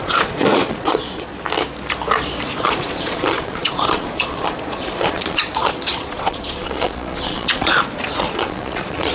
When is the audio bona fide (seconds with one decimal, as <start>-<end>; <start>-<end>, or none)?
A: 1.3-2.6